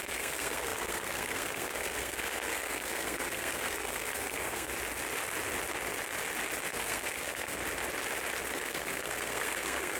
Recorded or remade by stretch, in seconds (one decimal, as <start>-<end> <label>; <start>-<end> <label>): 0.0-4.7 remade; 4.7-6.7 recorded; 6.7-7.6 remade; 7.6-8.5 recorded; 8.5-10.0 remade